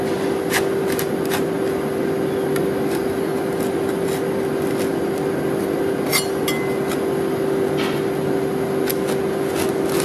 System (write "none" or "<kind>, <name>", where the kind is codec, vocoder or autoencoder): none